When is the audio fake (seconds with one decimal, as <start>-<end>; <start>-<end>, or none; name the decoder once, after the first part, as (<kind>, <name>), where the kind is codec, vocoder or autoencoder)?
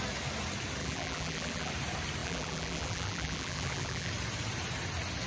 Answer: 0.8-1.7 (vocoder, BigVGAN v2); 2.2-4.1